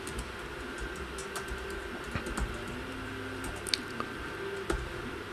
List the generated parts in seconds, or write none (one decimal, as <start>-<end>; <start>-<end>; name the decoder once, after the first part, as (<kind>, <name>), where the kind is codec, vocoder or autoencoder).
none